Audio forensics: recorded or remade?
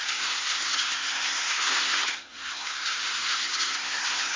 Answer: remade